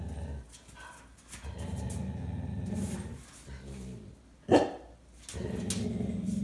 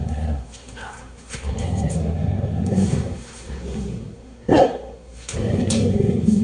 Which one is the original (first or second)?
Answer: first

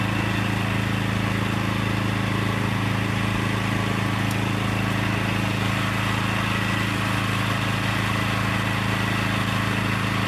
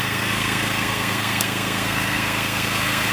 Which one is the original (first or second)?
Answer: first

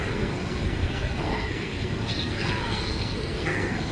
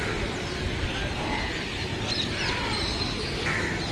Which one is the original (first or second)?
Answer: second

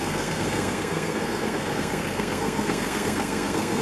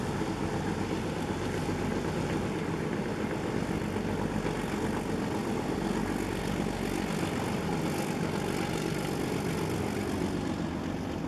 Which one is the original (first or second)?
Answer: second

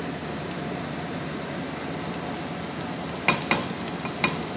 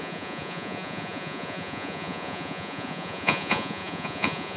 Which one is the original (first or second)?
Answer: first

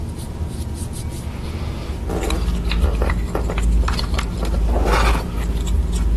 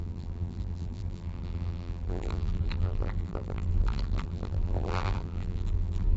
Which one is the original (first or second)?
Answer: first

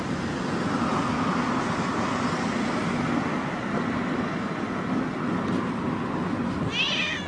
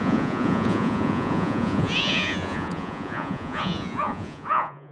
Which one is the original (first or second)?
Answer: first